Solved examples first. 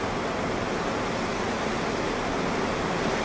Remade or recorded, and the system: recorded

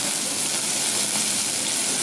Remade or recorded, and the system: recorded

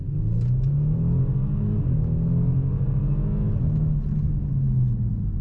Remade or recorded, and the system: recorded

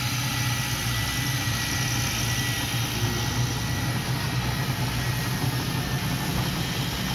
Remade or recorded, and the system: recorded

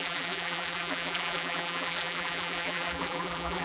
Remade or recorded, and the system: remade, vocoder, BigVGAN v2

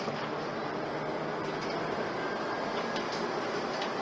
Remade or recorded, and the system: recorded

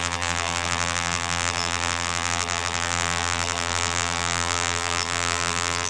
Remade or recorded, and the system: remade, vocoder, BigVGAN v2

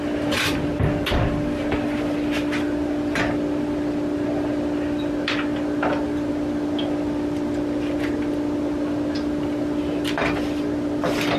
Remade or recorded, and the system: recorded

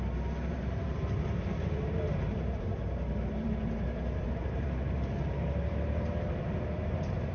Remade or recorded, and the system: remade, vocoder, BigVGAN v2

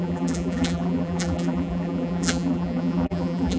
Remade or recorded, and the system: remade, vocoder, BigVGAN v2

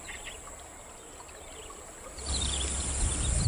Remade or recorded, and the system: recorded